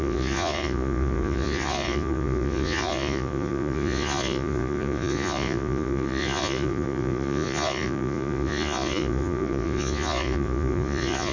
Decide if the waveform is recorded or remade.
remade